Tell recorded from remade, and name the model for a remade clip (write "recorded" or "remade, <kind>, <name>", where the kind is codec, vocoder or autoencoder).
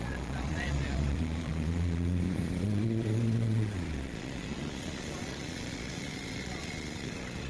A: remade, vocoder, Vocos